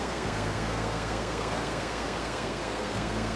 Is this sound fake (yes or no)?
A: yes